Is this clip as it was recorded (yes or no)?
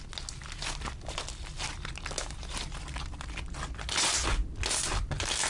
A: yes